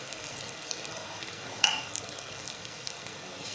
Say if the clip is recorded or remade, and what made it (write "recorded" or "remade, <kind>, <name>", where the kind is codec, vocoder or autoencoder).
remade, codec, SNAC